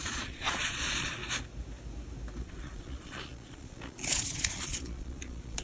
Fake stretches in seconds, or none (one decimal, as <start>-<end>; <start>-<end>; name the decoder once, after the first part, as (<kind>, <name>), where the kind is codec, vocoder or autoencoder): 0.0-1.2 (vocoder, Vocos); 2.4-5.6

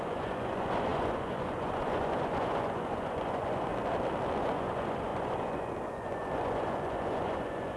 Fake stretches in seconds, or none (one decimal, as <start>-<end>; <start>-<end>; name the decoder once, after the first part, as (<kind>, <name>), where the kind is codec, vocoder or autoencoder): 0.0-3.7 (vocoder, Vocos); 4.4-7.8

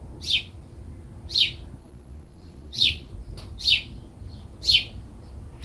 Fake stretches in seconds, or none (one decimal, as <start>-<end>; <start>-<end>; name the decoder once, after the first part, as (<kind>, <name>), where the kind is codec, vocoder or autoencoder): 1.8-3.1 (vocoder, Vocos)

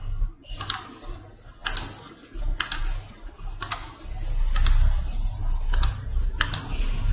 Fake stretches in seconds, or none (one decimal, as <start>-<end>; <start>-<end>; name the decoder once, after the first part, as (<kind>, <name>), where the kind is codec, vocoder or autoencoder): none

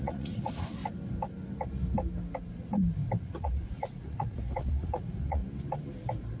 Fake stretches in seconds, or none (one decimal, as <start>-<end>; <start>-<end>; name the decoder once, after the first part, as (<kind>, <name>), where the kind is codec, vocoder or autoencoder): 0.0-0.8 (vocoder, Vocos); 3.2-5.4

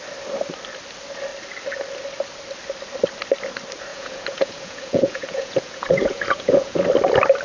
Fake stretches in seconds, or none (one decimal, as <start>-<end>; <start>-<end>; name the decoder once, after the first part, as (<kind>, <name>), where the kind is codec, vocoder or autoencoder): 3.9-6.8 (vocoder, Vocos)

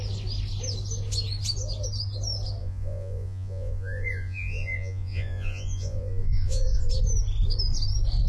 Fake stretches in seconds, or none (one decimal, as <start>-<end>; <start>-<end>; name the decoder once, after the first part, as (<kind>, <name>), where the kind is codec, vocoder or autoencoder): 2.6-6.9 (vocoder, Vocos)